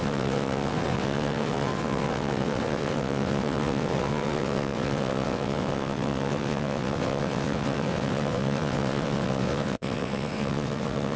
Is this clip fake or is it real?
fake